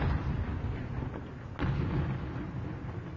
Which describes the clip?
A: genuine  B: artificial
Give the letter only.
A